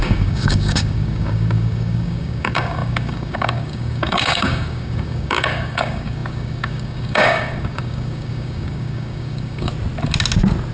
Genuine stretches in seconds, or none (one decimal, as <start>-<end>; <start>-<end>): 9.7-10.7